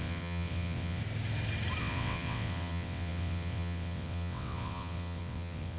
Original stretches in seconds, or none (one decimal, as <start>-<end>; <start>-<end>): 1.0-1.8